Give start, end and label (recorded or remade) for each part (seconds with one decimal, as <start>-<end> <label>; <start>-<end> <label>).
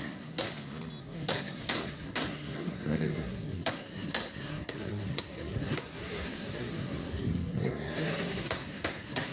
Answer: 0.0-0.5 remade; 0.5-1.0 recorded; 1.0-9.3 remade